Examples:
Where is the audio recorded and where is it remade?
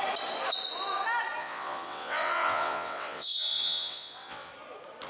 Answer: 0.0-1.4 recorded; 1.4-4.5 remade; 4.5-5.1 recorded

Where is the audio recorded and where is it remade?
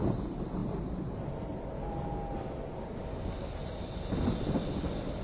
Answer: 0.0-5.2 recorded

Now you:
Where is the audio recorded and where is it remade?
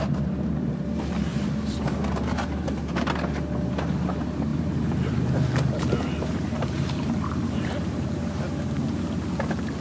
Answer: 0.0-1.3 recorded; 1.3-2.7 remade; 2.7-4.5 recorded; 4.5-9.0 remade; 9.0-9.8 recorded